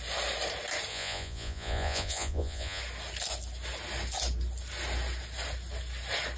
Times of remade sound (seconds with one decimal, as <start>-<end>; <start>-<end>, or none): 0.9-2.8